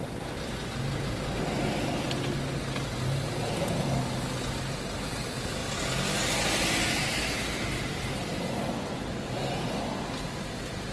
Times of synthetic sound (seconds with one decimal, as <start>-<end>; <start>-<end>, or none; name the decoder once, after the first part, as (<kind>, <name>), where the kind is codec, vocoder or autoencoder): none